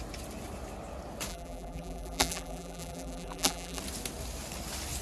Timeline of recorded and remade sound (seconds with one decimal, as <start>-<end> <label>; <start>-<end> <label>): 0.0-1.3 recorded; 1.3-3.8 remade; 3.8-5.0 recorded